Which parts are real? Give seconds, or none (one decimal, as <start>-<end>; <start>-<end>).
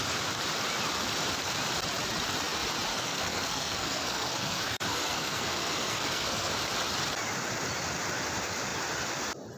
0.0-2.9; 6.5-9.6